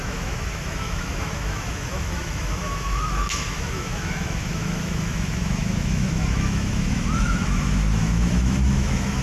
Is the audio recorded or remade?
remade